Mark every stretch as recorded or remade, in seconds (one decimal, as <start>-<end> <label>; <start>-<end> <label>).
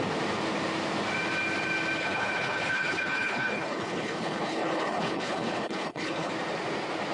0.0-2.0 recorded; 2.0-6.3 remade; 6.3-7.1 recorded